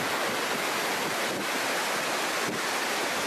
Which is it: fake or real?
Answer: real